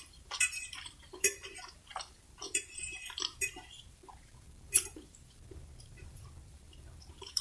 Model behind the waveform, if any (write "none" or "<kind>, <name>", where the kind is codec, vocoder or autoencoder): vocoder, BigVGAN v2